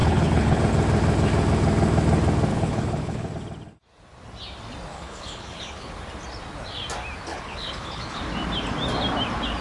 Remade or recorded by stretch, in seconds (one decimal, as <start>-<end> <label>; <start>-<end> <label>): 0.0-0.6 remade; 0.6-2.5 recorded; 2.5-3.3 remade; 3.3-4.9 recorded; 4.9-5.9 remade; 5.9-7.3 recorded; 7.3-8.2 remade; 8.2-9.6 recorded